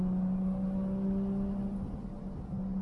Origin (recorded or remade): recorded